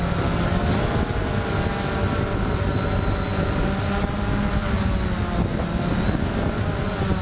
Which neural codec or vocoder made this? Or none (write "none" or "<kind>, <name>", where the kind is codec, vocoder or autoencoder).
none